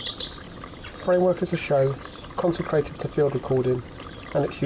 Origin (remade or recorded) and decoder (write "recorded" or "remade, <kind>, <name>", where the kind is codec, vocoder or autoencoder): recorded